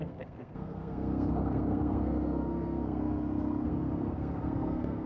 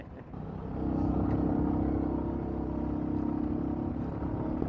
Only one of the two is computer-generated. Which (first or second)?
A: first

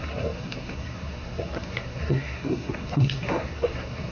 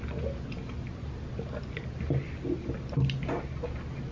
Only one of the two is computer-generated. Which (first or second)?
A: first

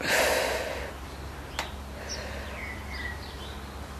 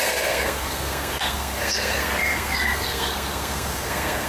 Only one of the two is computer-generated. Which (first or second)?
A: second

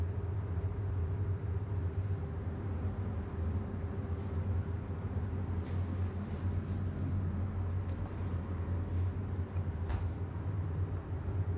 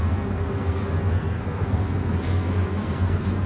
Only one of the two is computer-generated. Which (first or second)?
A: second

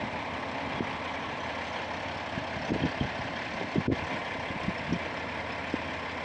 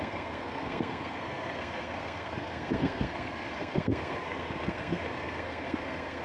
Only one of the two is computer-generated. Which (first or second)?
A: second